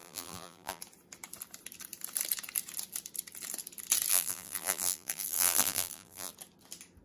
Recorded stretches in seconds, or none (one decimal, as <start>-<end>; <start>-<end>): 0.8-4.1; 6.3-7.0